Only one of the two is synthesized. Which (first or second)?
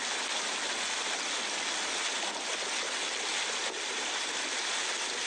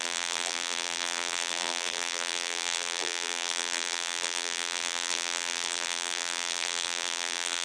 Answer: second